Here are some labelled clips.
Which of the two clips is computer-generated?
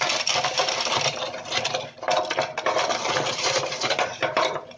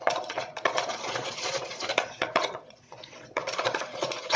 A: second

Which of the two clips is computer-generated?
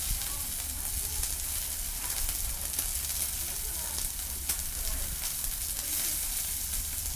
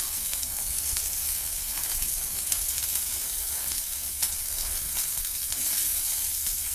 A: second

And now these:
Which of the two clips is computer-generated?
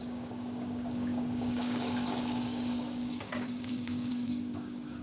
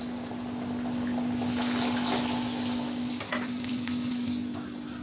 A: first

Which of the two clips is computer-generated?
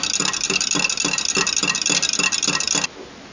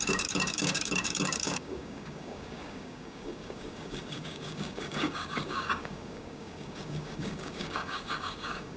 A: second